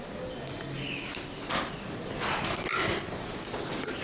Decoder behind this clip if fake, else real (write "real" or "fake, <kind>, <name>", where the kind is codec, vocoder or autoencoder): real